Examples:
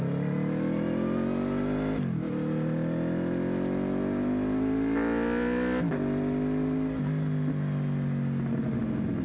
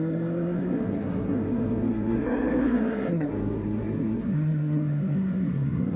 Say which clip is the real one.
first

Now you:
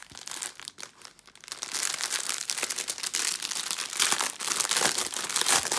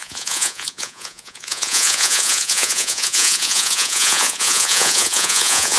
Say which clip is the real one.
first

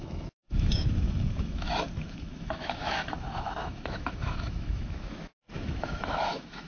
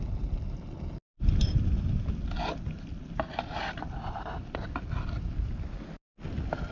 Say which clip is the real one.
second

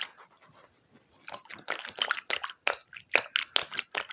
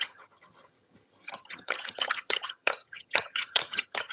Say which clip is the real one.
first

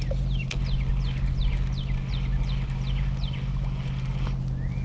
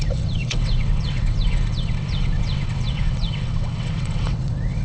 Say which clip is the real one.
first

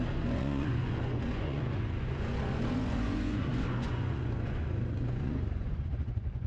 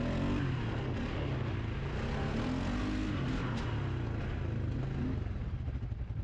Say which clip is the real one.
second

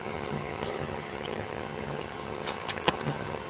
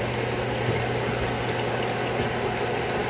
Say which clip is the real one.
second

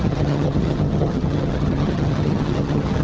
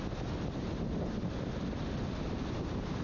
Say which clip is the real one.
second